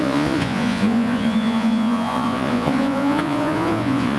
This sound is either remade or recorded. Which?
remade